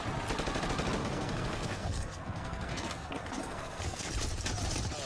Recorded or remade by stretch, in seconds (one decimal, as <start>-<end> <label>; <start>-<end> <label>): 0.0-1.0 recorded; 1.0-4.1 remade; 4.1-5.1 recorded